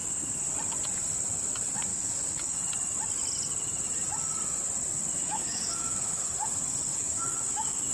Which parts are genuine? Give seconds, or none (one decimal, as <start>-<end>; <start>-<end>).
0.0-1.9; 2.6-5.1; 6.3-6.9